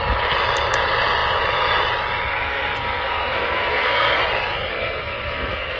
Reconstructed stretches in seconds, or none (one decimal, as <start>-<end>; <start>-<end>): 2.3-4.2; 4.7-5.8